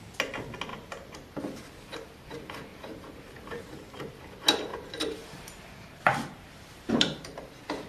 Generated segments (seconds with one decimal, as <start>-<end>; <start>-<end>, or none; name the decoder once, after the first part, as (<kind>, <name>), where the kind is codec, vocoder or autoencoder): 0.7-1.4 (vocoder, BigVGAN v2); 2.7-4.1; 4.7-7.4